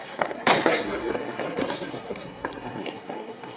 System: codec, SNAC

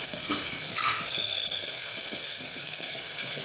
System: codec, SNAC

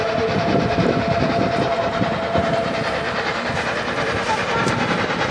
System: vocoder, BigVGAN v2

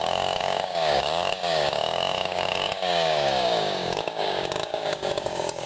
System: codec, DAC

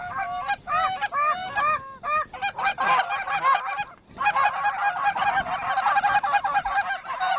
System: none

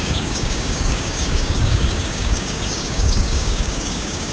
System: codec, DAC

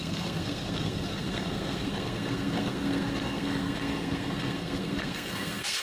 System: codec, SNAC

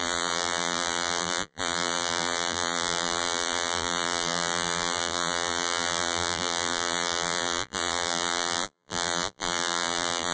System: vocoder, BigVGAN v2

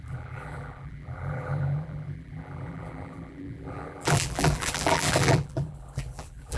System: vocoder, BigVGAN v2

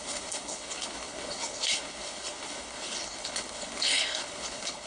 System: codec, HILCodec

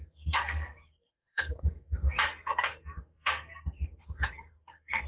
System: codec, SNAC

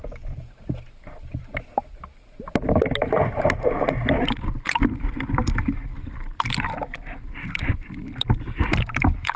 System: vocoder, BigVGAN v2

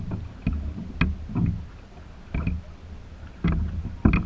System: none